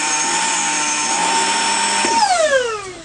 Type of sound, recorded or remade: recorded